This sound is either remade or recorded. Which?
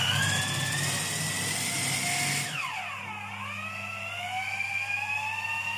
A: recorded